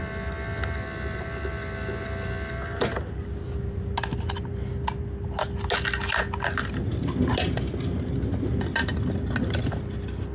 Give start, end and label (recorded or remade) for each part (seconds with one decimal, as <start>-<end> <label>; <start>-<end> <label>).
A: 0.0-10.3 recorded